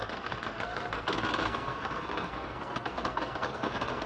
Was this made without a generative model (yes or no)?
no